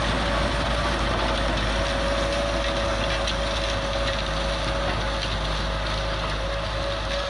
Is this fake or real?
real